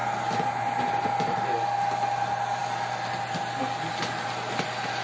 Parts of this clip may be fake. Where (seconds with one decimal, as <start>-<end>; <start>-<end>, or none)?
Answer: none